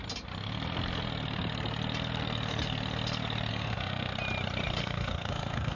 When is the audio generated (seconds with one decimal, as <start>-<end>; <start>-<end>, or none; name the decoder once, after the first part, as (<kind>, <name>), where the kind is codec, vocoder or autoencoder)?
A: 3.5-4.1 (codec, SNAC); 4.8-5.8